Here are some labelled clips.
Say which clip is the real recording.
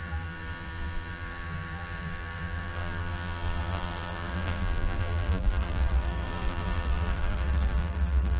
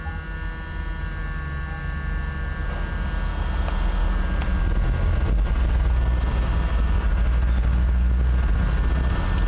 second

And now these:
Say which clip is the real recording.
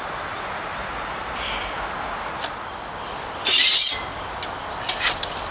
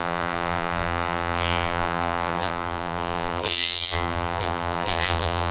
first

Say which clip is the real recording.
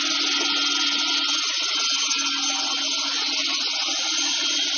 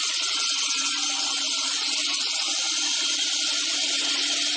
first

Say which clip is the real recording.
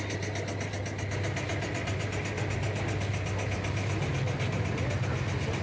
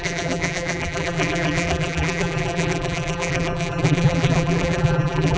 first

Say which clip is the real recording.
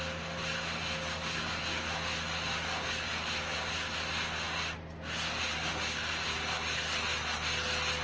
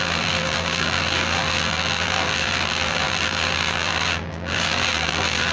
first